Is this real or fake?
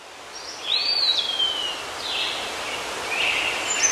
real